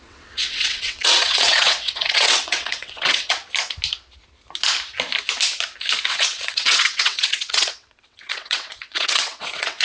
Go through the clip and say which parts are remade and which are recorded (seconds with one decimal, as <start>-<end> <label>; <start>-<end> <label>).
0.0-3.4 remade; 3.4-6.1 recorded; 6.1-9.8 remade